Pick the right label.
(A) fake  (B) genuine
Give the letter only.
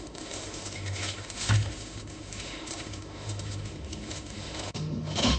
A